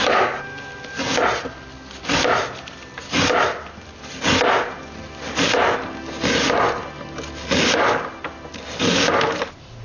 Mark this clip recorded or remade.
recorded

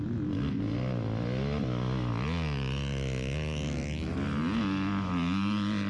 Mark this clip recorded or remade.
recorded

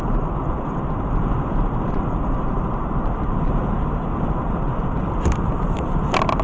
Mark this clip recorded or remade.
remade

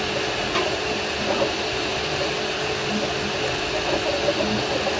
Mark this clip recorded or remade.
recorded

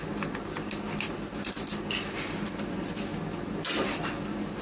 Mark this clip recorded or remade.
recorded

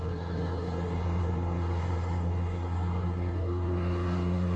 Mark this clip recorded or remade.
remade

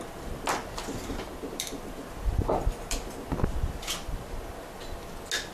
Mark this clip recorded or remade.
recorded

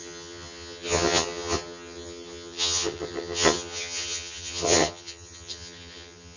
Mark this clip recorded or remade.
remade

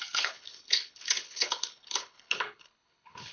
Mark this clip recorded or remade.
remade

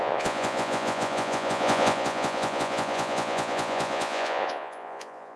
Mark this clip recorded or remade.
remade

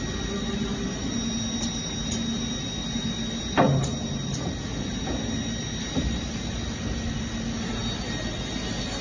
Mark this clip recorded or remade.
recorded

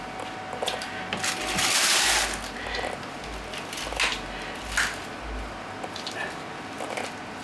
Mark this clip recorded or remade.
recorded